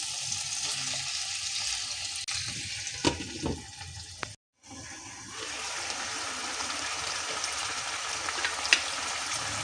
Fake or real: real